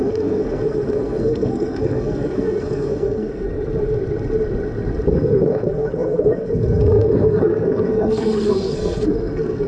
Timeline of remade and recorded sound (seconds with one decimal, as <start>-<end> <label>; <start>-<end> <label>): 0.0-3.5 remade; 3.5-5.1 recorded; 5.1-9.7 remade